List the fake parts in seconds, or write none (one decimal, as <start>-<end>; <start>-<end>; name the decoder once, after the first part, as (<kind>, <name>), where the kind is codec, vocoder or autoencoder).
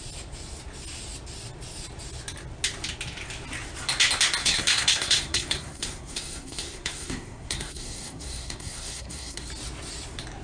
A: 4.4-9.5 (codec, SNAC)